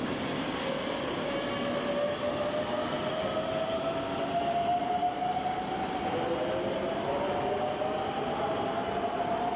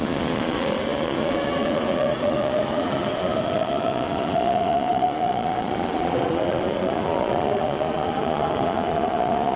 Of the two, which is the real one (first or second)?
first